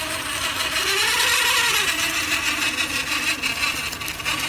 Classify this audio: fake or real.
real